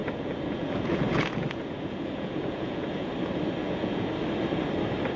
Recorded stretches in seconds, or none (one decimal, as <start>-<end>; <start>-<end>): 3.1-3.6; 4.1-5.2